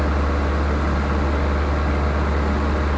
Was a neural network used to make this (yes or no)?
no